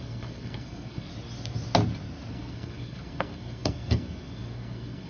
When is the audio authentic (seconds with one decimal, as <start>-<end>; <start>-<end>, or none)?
1.1-2.3